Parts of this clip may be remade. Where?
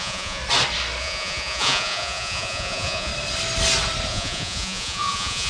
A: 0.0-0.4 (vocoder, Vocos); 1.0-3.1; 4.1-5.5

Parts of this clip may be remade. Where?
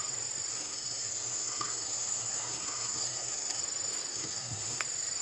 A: 0.5-3.6 (codec, SNAC); 4.1-4.8